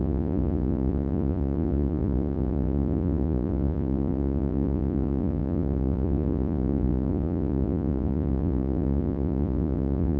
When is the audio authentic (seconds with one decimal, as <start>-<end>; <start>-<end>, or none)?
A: none